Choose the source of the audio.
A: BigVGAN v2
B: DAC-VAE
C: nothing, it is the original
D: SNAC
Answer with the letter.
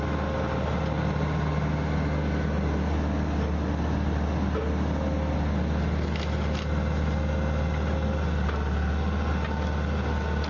C